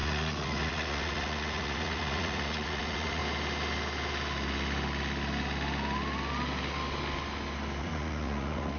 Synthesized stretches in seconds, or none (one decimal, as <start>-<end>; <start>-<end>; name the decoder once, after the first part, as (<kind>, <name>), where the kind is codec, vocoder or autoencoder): 0.0-3.2 (vocoder, Vocos); 7.8-8.8

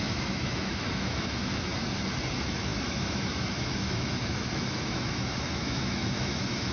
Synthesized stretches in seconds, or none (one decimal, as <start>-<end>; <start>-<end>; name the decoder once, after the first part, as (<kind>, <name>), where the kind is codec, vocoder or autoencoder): 0.0-1.7 (autoencoder, DAC-VAE); 2.3-6.7

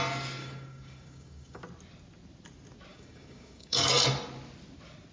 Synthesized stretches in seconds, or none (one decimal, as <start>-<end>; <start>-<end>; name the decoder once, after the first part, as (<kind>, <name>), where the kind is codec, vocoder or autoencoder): 0.4-1.6 (codec, DAC); 2.9-3.9

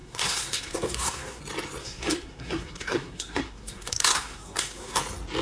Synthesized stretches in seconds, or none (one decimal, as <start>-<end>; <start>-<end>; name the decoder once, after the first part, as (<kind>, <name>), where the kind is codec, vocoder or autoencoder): 0.0-1.4 (codec, SNAC); 1.8-5.0

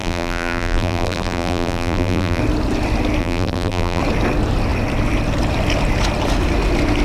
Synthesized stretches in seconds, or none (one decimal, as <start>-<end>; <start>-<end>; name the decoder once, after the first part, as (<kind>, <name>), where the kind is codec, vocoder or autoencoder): 0.0-2.4 (vocoder, BigVGAN v2); 3.2-4.0